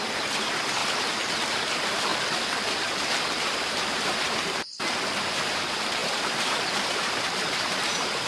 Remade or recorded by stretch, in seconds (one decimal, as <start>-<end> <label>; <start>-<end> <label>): 0.0-0.8 remade; 0.8-1.5 recorded; 1.5-2.1 remade; 2.1-3.4 recorded; 3.4-4.7 remade; 4.7-5.3 recorded; 5.3-8.3 remade